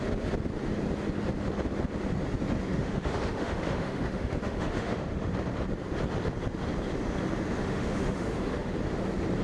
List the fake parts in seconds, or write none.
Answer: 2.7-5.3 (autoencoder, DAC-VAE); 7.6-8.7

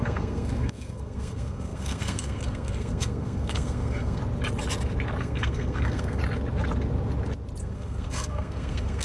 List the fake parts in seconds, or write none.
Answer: 0.0-4.2 (codec, SNAC); 5.2-6.2; 7.6-9.0

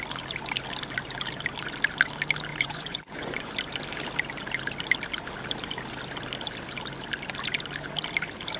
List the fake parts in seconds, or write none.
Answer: 2.5-3.5 (vocoder, Vocos)